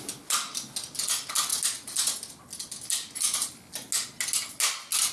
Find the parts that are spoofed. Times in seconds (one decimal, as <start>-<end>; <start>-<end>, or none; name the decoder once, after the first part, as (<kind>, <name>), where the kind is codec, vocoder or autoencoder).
none